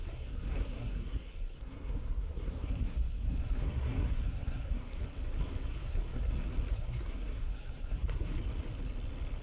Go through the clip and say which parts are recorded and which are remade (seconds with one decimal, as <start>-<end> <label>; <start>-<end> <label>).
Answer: 0.0-5.0 remade; 5.0-5.7 recorded; 5.7-6.3 remade; 6.3-6.7 recorded; 6.7-8.4 remade; 8.4-9.4 recorded